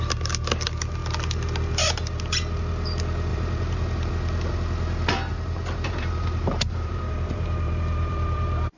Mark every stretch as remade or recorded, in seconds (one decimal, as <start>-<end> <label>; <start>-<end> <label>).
0.0-3.3 recorded; 3.3-4.1 remade; 4.1-5.3 recorded; 5.3-8.8 remade